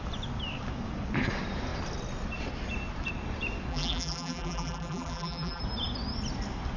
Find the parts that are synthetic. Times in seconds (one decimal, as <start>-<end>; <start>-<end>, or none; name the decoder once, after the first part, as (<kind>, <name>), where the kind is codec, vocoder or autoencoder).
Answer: 3.7-5.6 (vocoder, BigVGAN v2)